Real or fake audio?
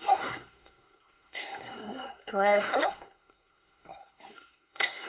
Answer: fake